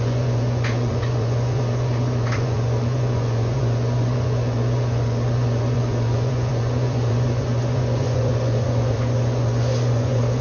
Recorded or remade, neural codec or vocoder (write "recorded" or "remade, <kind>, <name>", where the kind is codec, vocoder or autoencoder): remade, vocoder, Vocos